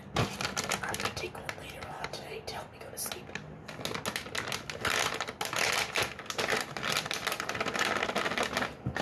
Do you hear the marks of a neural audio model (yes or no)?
no